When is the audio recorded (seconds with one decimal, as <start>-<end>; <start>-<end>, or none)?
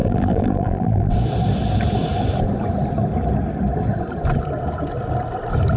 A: 1.1-5.8